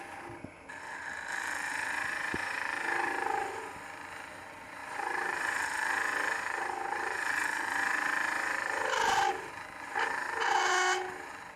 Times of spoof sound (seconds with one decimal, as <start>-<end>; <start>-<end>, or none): 4.8-9.3

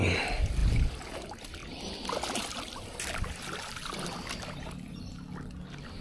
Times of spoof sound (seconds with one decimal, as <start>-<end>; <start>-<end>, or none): none

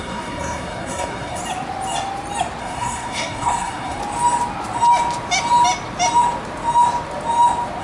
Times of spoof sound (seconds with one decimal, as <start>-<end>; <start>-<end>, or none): 0.0-1.4; 2.6-4.0